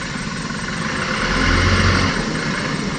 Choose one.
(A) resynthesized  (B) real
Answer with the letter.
B